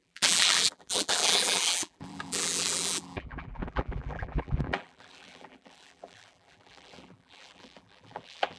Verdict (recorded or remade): remade